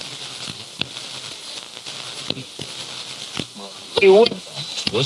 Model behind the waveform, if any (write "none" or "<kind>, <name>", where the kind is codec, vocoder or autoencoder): none